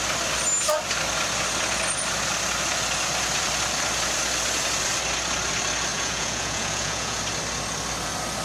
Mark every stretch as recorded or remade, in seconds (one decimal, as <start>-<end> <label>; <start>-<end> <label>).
0.0-5.9 recorded; 5.9-7.2 remade; 7.2-8.4 recorded